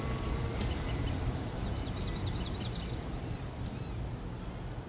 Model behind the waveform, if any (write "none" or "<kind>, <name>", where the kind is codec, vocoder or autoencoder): vocoder, BigVGAN v2